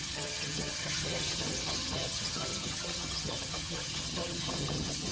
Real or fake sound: fake